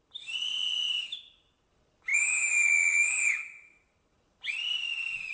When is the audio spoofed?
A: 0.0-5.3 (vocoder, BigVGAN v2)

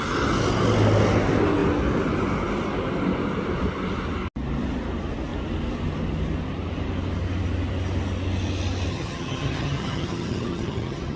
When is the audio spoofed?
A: 8.9-11.2 (vocoder, HiFi-GAN)

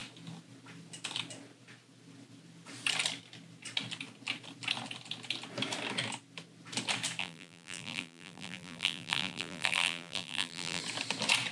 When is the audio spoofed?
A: 7.2-10.8 (vocoder, BigVGAN v2)

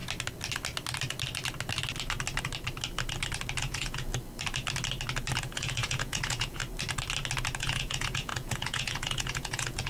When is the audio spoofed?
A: 3.6-4.1 (vocoder, Vocos); 5.4-6.6; 7.6-9.9

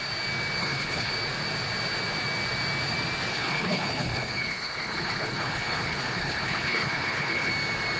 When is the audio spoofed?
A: 0.6-1.1 (codec, HILCodec); 3.3-7.5